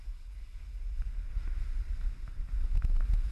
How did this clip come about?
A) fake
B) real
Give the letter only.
B